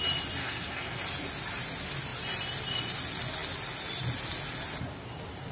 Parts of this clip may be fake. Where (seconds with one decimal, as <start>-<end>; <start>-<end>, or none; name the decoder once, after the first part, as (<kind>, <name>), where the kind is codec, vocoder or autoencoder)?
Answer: 0.4-1.0 (codec, SNAC)